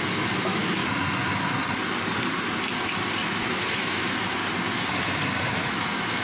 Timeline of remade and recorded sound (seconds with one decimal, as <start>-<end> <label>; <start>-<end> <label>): 0.0-0.8 remade; 0.8-3.4 recorded; 3.4-4.4 remade; 4.4-5.5 recorded; 5.5-6.2 remade